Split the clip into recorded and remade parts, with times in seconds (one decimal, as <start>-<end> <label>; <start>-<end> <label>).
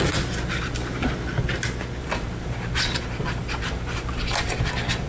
0.0-2.0 recorded; 2.0-5.1 remade